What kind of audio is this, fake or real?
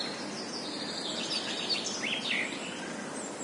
real